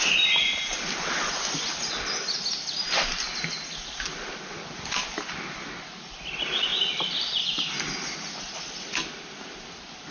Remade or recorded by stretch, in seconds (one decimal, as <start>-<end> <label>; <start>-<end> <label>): 0.0-10.1 recorded